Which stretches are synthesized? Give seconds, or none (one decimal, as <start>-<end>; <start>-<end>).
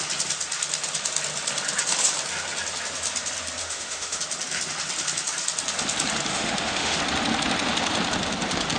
3.6-4.2; 6.3-7.0